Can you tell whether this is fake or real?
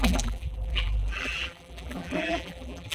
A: fake